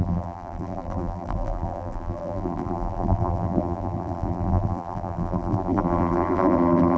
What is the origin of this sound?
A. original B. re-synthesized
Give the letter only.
B